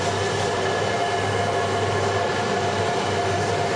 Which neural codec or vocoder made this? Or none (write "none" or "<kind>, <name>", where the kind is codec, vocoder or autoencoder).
none